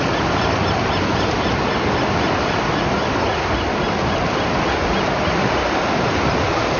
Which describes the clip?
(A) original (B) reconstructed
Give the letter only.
A